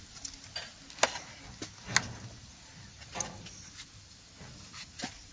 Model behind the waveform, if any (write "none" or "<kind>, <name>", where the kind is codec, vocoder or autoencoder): none